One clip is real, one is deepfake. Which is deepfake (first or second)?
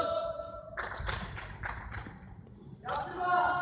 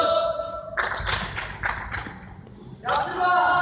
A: first